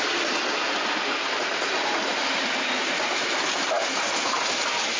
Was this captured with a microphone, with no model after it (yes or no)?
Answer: yes